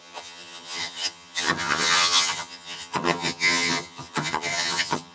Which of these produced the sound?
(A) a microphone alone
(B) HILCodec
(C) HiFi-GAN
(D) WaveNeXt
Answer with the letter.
C